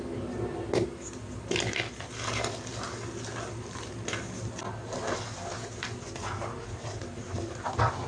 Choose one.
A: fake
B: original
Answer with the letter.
B